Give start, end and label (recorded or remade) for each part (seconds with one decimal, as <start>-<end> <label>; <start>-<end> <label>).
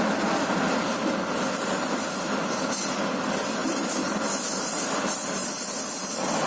0.0-3.6 recorded; 3.6-4.2 remade; 4.2-5.4 recorded; 5.4-6.1 remade; 6.1-6.5 recorded